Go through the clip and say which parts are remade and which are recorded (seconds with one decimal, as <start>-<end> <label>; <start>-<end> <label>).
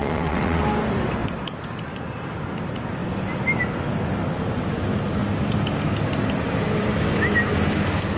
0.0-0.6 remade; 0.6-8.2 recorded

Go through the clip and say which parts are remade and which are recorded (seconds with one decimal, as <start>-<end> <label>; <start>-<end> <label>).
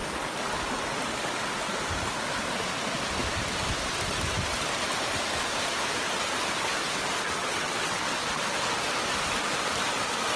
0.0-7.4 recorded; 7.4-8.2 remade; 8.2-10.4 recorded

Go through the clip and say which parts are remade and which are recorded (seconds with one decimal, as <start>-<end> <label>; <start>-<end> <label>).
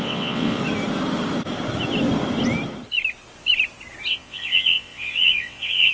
0.0-0.6 remade; 0.6-4.1 recorded; 4.1-5.9 remade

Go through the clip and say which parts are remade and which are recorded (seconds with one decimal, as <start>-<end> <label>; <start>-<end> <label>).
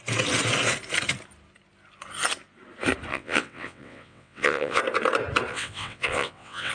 0.0-3.1 recorded; 3.1-4.8 remade; 4.8-5.5 recorded; 5.5-6.7 remade